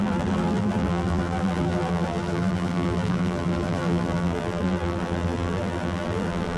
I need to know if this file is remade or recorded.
remade